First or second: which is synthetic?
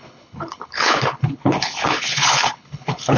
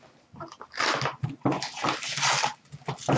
first